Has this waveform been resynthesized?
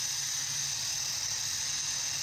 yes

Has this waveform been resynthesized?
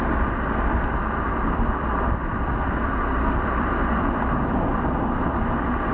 yes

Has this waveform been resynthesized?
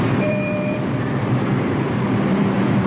yes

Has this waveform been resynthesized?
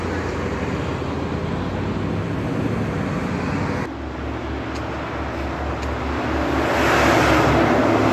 no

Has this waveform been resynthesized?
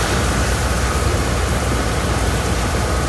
yes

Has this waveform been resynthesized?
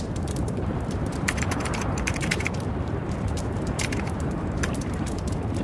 yes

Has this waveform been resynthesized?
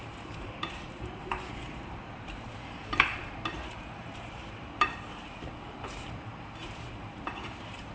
yes